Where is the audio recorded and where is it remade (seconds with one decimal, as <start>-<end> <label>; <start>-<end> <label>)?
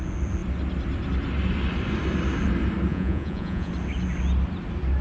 0.0-2.9 recorded; 2.9-3.7 remade; 3.7-5.0 recorded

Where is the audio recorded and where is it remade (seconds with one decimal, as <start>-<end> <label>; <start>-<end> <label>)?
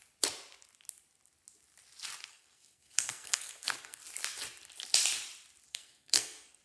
0.0-2.3 recorded; 2.3-4.0 remade; 4.0-5.7 recorded; 5.7-6.6 remade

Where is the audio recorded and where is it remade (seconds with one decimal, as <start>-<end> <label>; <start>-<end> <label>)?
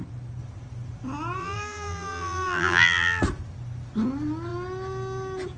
0.0-1.4 recorded; 1.4-3.2 remade; 3.2-5.6 recorded